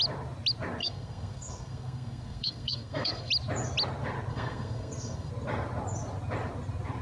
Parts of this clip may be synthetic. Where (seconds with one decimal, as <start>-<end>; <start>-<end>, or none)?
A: 0.8-3.3; 4.3-5.3